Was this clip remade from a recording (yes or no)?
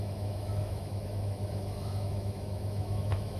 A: yes